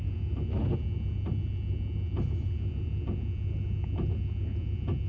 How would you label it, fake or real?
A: real